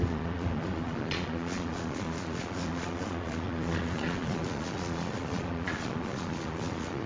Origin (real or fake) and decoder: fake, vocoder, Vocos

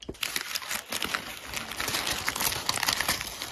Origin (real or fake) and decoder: real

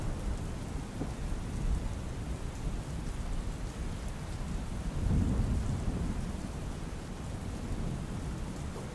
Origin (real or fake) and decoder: fake, vocoder, BigVGAN v2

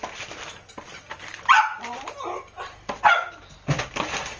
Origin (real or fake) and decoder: real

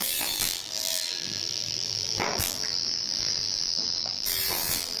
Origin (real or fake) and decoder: fake, vocoder, BigVGAN v2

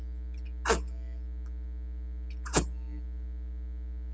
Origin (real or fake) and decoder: real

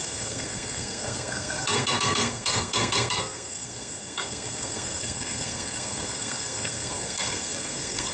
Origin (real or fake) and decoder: fake, codec, SNAC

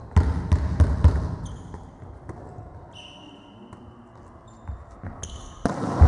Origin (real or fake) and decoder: real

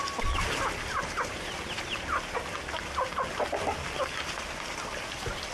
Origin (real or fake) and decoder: real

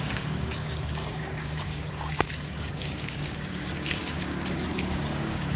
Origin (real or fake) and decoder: fake, codec, DAC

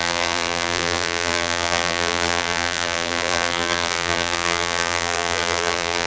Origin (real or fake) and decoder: fake, vocoder, BigVGAN v2